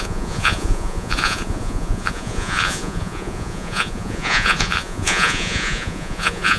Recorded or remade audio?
remade